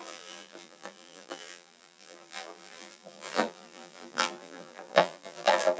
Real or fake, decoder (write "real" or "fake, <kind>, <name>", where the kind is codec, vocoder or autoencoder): fake, vocoder, BigVGAN v2